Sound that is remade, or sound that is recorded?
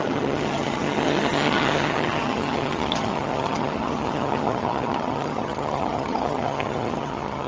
remade